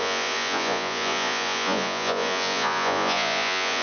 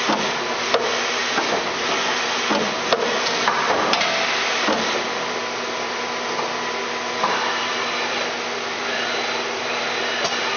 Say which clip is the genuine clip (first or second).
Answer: second